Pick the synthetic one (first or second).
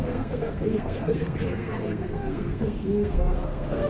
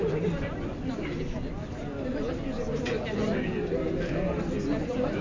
first